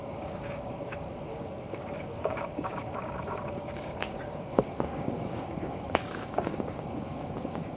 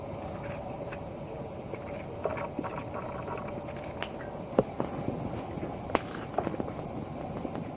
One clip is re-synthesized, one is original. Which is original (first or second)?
second